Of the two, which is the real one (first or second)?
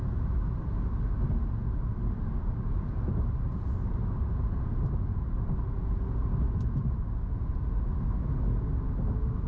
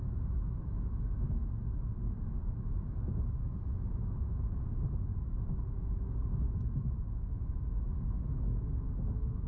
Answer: first